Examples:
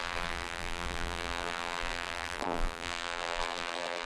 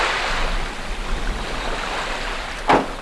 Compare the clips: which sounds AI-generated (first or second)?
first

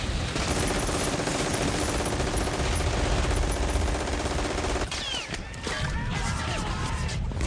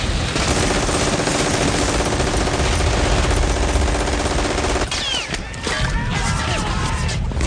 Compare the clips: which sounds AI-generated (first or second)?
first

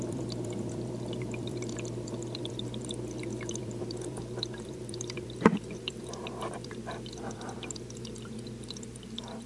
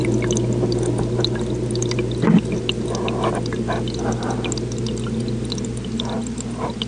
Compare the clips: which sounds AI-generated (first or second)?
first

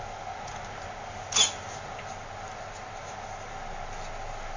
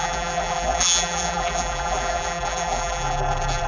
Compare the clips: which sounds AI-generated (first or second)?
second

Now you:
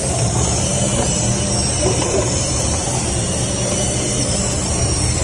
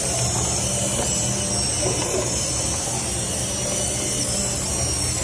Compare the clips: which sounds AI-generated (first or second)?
first